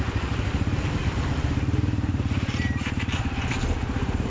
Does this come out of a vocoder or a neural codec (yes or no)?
yes